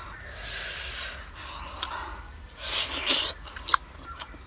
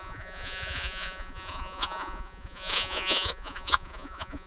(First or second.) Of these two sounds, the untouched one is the first